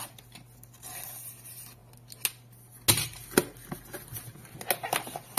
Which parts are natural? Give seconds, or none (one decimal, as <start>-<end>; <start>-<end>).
0.0-5.4